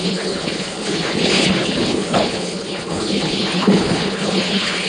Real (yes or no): no